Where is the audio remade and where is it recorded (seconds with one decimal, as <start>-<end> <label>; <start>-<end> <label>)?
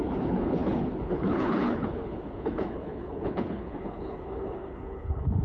0.0-5.4 remade